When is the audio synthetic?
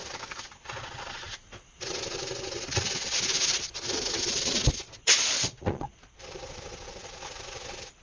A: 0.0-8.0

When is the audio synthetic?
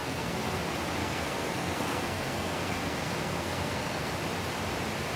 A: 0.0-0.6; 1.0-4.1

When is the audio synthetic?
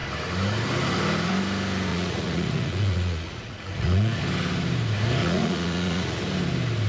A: 1.9-4.2; 5.2-6.2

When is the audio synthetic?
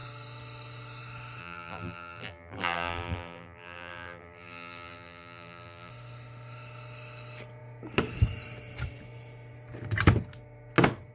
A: 1.4-5.9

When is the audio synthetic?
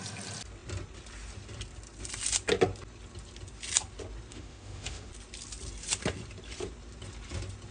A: 4.3-5.1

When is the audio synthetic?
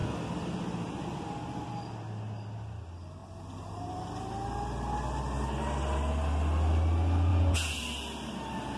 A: 7.3-7.8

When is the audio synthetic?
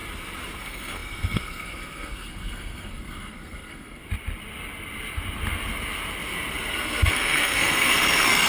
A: 0.6-4.0; 6.7-8.5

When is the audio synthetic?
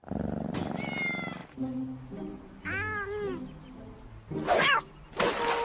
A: none